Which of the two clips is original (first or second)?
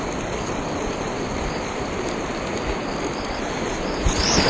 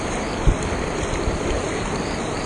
second